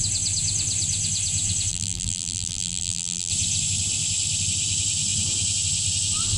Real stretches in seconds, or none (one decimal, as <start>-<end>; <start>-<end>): 0.0-1.7; 3.3-6.4